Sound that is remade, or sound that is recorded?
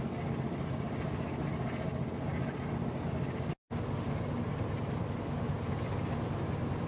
recorded